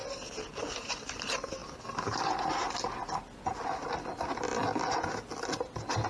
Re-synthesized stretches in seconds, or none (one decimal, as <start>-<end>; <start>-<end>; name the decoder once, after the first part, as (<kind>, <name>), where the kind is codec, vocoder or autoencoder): none

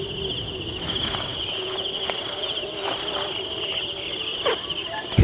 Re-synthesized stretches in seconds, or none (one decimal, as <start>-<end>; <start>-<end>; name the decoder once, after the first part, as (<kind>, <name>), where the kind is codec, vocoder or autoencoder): none

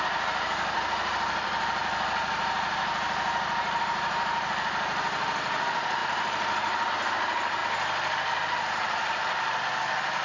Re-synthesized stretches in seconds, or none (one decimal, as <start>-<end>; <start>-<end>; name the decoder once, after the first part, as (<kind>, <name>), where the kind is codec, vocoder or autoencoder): 6.0-6.9 (vocoder, BigVGAN v2); 7.6-9.6

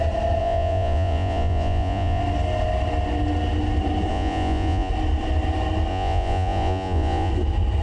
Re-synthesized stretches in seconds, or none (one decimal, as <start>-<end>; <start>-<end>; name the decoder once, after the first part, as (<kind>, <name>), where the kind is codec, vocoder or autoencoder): 0.4-2.2 (vocoder, Vocos); 4.1-4.9; 5.9-7.3